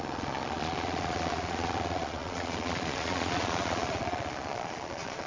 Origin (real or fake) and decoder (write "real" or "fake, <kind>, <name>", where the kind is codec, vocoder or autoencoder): fake, vocoder, Vocos